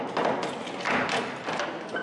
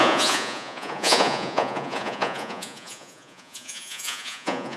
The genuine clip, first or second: first